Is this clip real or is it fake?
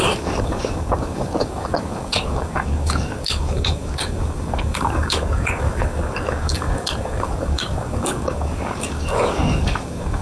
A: fake